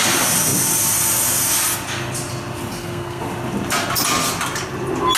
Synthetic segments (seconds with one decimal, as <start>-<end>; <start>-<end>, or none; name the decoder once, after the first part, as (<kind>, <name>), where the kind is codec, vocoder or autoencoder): 2.7-3.2 (codec, SNAC)